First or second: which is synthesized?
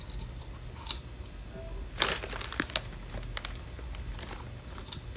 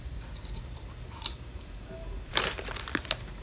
second